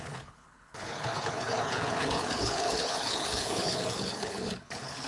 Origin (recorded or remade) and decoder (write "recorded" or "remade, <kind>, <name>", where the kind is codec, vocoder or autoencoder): remade, codec, HILCodec